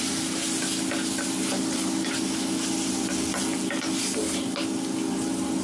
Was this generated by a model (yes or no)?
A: no